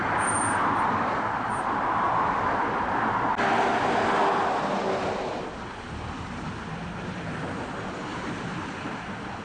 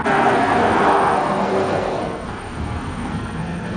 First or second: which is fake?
second